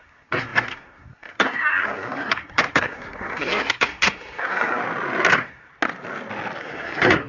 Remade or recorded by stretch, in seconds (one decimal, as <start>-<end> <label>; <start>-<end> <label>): 0.0-4.8 remade; 4.8-5.3 recorded; 5.3-5.7 remade; 5.7-6.6 recorded; 6.6-7.3 remade